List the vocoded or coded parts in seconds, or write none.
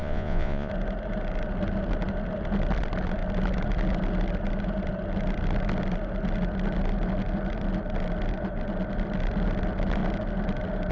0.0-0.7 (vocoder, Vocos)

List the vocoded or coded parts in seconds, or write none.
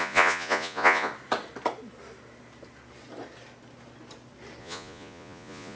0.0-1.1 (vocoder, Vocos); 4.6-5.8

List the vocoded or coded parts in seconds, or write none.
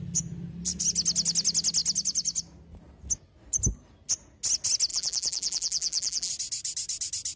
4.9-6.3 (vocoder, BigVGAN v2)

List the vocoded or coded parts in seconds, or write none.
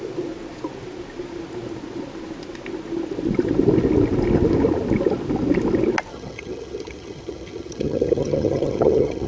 6.1-9.3 (vocoder, HiFi-GAN)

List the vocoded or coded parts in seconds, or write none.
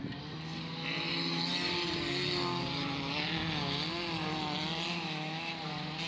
4.9-5.5 (autoencoder, DAC-VAE)